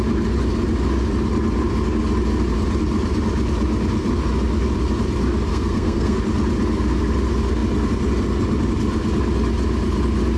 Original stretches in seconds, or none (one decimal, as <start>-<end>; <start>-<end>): 0.0-5.5; 6.2-10.4